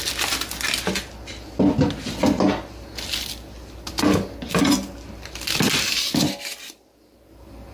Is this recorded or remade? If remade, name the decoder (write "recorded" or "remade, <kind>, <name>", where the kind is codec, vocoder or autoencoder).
recorded